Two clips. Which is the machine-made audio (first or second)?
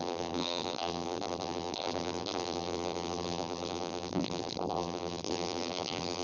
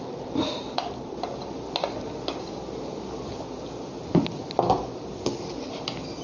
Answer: first